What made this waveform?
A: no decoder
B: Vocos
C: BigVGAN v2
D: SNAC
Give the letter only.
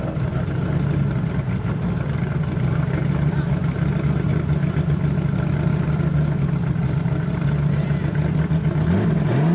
A